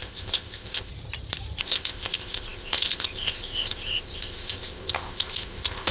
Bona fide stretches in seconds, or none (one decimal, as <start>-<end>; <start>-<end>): 0.9-1.6